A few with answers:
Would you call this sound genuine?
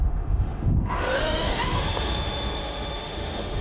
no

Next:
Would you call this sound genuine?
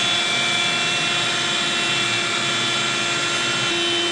yes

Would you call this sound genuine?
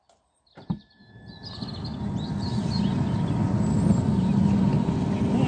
yes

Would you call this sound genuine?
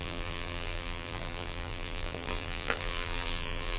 no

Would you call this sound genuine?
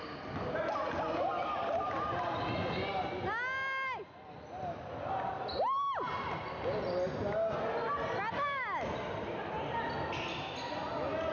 yes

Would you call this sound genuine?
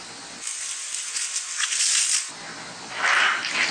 yes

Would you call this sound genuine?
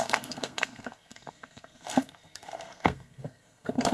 no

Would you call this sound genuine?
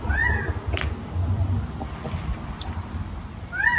yes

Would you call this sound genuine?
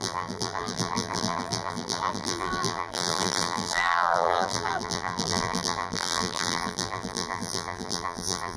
no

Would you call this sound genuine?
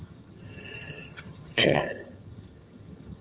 no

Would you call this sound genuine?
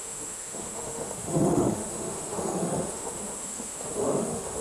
no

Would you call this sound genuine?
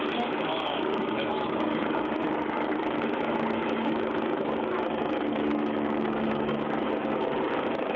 no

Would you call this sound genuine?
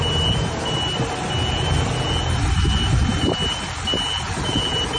yes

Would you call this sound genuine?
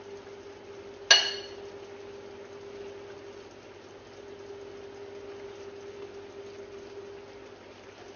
yes